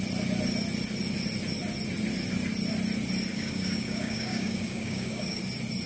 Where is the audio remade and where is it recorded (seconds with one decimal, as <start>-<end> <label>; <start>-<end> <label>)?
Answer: 0.0-3.3 recorded; 3.3-5.4 remade; 5.4-5.9 recorded